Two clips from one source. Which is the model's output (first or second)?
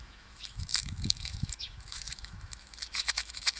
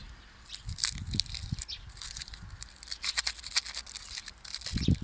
first